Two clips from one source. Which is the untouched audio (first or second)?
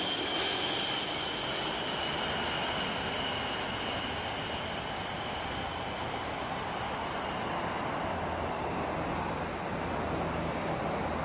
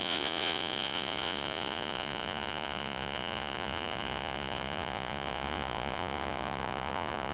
first